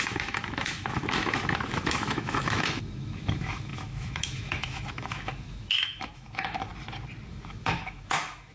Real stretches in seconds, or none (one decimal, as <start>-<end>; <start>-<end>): 6.7-7.3